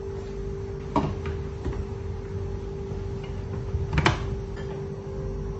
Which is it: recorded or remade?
recorded